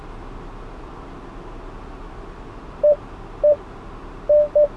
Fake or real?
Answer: real